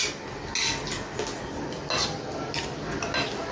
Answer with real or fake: real